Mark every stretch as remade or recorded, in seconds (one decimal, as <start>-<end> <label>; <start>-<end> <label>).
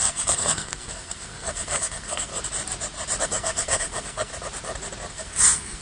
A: 0.0-2.3 remade; 2.3-3.2 recorded; 3.2-4.3 remade; 4.3-5.1 recorded; 5.1-5.8 remade